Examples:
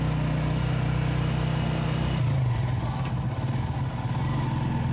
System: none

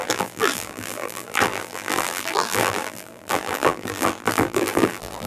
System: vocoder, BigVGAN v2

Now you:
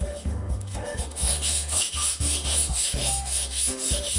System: autoencoder, DAC-VAE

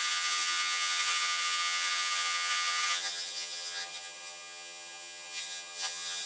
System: vocoder, HiFi-GAN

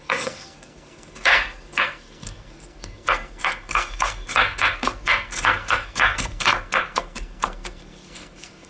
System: codec, SNAC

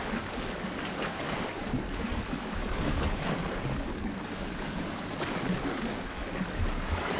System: codec, DAC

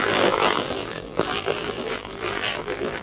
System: vocoder, BigVGAN v2